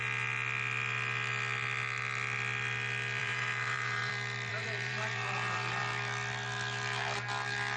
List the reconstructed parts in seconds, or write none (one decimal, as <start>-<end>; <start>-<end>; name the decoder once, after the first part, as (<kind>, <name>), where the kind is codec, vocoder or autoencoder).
3.2-4.1 (vocoder, BigVGAN v2); 4.5-5.8